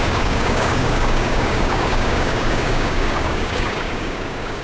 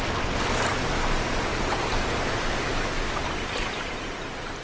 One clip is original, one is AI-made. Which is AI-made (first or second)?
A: first